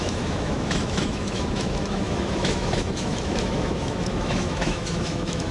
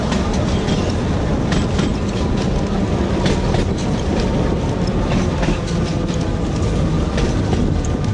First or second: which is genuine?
second